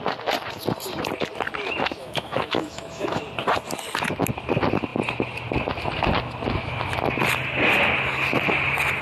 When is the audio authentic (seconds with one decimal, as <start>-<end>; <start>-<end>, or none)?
0.0-2.0; 3.2-9.0